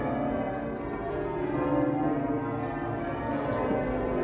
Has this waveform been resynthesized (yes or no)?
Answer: no